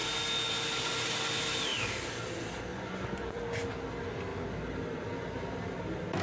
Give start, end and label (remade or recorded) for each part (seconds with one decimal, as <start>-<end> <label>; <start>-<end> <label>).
0.0-2.7 recorded; 2.7-3.4 remade; 3.4-6.2 recorded